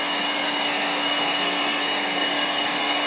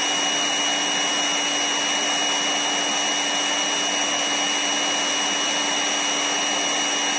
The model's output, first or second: first